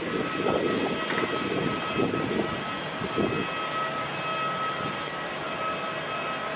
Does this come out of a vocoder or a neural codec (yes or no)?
no